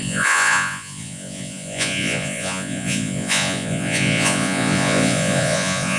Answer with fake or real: fake